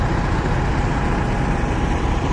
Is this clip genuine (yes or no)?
no